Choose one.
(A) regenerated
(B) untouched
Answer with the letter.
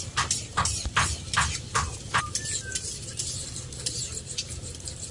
B